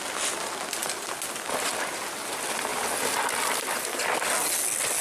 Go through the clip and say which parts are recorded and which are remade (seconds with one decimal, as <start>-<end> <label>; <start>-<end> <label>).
0.0-0.8 recorded; 0.8-1.5 remade; 1.5-2.7 recorded; 2.7-4.2 remade; 4.2-5.0 recorded